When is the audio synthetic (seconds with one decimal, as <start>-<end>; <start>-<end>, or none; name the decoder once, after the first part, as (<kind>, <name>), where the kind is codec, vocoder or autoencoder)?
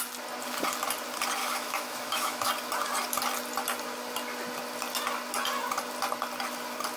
1.4-2.5 (autoencoder, DAC-VAE)